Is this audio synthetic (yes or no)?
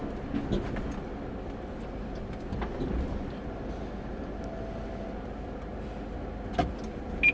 no